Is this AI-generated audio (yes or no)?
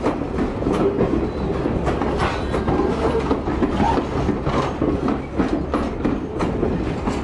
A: no